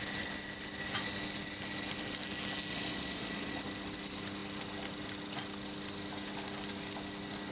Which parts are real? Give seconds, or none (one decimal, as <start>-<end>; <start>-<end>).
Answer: 0.0-2.7; 3.6-7.5